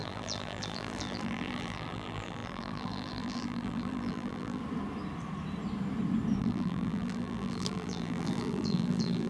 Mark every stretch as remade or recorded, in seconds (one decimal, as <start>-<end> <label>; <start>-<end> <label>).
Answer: 0.0-4.6 remade; 4.6-6.4 recorded; 6.4-9.3 remade